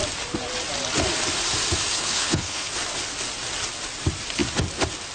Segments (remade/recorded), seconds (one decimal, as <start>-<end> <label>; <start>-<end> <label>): 0.0-1.9 recorded; 1.9-2.7 remade; 2.7-5.1 recorded